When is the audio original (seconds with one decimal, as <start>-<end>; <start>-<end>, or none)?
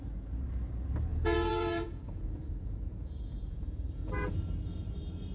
0.0-1.1; 4.3-5.3